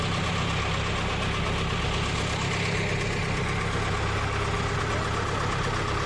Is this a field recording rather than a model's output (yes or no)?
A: yes